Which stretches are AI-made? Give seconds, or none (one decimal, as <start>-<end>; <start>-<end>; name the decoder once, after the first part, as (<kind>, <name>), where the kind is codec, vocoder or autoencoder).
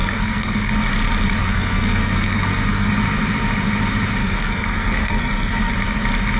0.0-0.7 (codec, SNAC); 1.4-2.9; 4.2-5.7